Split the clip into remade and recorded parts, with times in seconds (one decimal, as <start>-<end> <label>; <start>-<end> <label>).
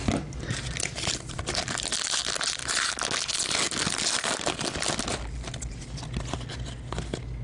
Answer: 0.0-7.4 recorded